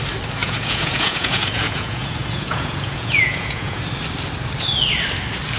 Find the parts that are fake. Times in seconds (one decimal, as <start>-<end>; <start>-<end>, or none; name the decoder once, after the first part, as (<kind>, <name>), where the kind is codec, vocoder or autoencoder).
0.4-3.8 (vocoder, Vocos)